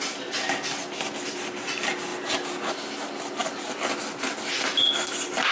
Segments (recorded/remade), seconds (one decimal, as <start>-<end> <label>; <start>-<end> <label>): 0.0-5.5 recorded